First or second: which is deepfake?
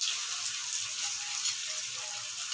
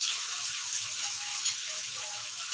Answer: second